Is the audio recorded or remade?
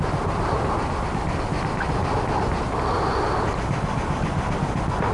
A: recorded